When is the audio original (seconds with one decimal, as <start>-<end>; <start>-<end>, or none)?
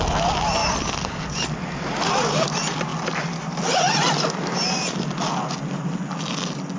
0.0-6.8